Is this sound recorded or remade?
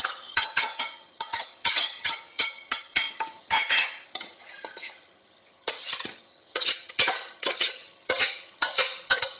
remade